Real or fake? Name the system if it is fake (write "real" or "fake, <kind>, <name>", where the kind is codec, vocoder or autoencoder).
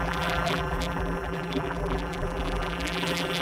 fake, vocoder, BigVGAN v2